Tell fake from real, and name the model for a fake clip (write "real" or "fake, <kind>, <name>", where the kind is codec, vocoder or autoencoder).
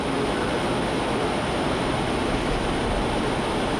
real